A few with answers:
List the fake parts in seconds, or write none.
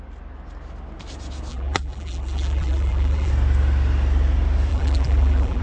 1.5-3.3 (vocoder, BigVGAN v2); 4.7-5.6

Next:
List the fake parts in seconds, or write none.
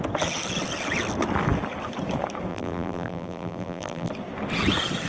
2.5-4.1 (vocoder, BigVGAN v2)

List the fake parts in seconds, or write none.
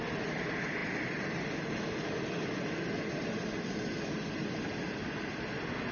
none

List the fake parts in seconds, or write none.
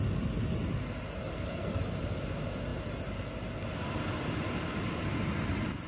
1.3-1.8 (codec, SNAC)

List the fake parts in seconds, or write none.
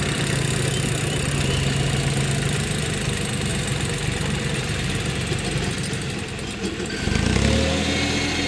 3.5-5.1 (vocoder, BigVGAN v2)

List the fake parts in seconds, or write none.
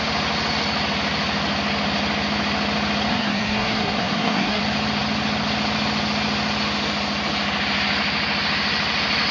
3.1-4.6 (codec, SNAC)